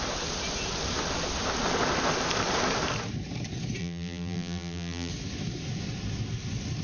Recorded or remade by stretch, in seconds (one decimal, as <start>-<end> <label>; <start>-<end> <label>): 0.0-3.8 recorded; 3.8-5.1 remade; 5.1-6.8 recorded